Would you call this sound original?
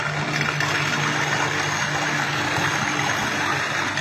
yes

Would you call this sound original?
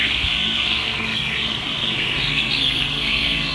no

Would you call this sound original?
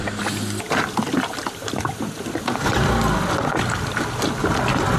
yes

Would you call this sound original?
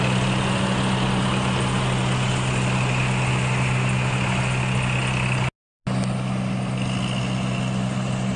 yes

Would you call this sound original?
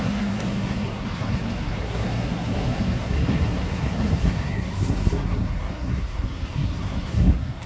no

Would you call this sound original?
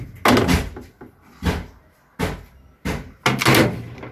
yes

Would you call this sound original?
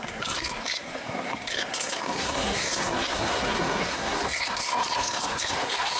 no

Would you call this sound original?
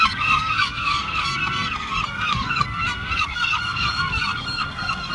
no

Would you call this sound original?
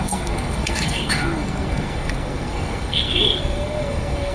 no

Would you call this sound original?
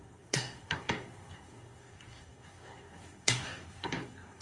no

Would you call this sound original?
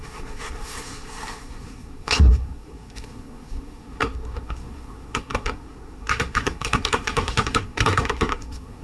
no